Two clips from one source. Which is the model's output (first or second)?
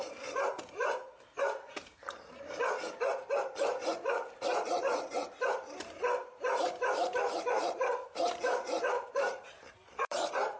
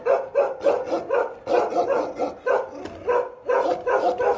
first